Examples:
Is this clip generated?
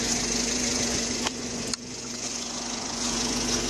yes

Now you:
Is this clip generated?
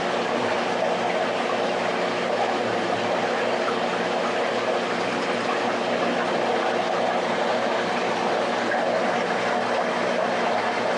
no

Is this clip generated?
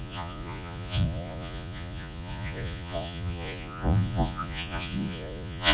yes